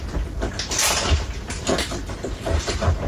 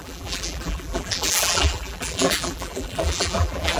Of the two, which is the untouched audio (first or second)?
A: first